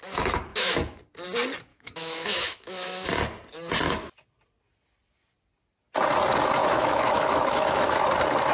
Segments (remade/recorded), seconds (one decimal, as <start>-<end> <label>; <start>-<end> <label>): 0.0-0.5 recorded; 0.5-1.0 remade; 1.0-1.7 recorded; 1.7-3.1 remade; 3.1-6.6 recorded; 6.6-8.0 remade; 8.0-8.5 recorded